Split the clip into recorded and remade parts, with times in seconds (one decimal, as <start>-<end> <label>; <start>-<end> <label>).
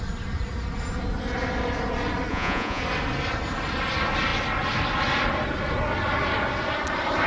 0.0-2.3 recorded; 2.3-2.8 remade; 2.8-7.3 recorded